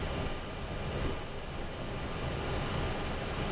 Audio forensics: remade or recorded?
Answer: recorded